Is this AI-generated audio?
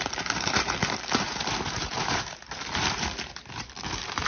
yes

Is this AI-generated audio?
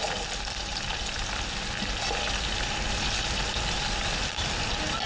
no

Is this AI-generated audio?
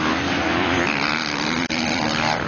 no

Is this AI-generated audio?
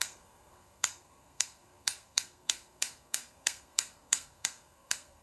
yes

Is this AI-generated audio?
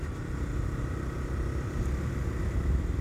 no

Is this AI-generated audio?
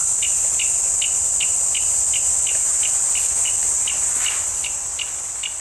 no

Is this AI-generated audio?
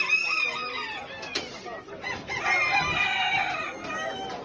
no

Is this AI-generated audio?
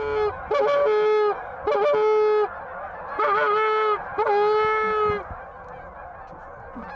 no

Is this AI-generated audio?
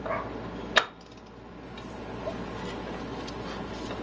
no